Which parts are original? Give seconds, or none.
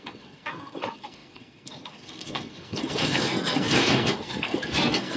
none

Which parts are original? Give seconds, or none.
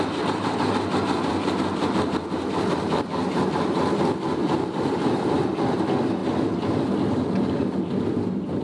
0.0-1.3; 3.4-4.4; 5.4-6.2; 7.5-8.6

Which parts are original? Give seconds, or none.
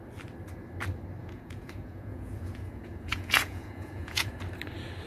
0.0-1.2; 4.3-5.1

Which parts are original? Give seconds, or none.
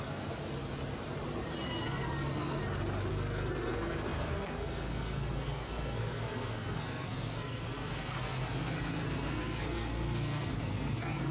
0.4-1.8; 2.6-3.1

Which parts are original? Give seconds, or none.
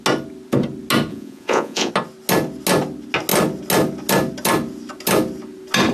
0.0-1.1; 1.9-5.9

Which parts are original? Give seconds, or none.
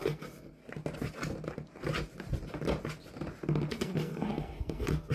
0.6-3.7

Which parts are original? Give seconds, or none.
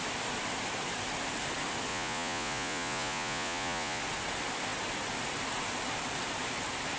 0.0-1.9; 4.0-7.0